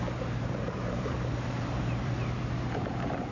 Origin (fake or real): fake